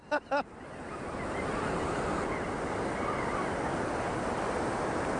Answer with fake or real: real